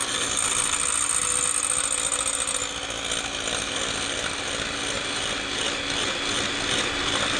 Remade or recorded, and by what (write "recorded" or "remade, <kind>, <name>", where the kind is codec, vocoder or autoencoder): recorded